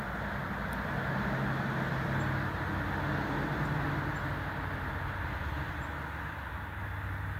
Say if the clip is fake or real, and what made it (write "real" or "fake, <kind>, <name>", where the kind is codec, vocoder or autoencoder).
real